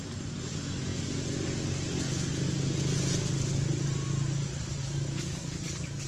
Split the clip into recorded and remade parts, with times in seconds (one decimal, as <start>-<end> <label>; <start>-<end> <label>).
0.0-4.8 recorded; 4.8-6.1 remade